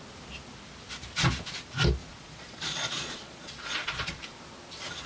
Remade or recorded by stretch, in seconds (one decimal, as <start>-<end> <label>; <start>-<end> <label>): 0.0-2.0 recorded; 2.0-4.2 remade; 4.2-5.1 recorded